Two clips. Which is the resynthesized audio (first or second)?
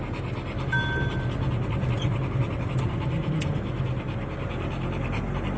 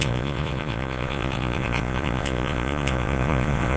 second